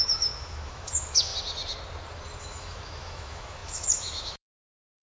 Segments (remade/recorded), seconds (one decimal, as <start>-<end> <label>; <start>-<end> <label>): 0.0-1.3 remade; 1.3-2.4 recorded; 2.4-5.0 remade